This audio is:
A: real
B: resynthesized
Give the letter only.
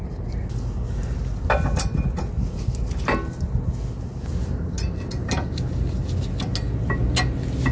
A